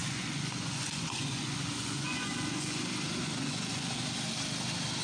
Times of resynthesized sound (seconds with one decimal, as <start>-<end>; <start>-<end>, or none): 0.0-2.8; 3.2-4.0